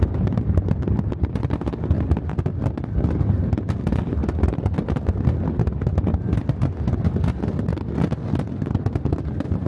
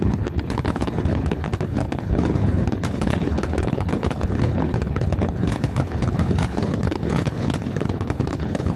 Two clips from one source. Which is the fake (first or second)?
second